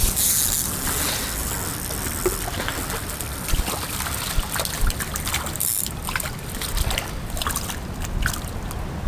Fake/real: real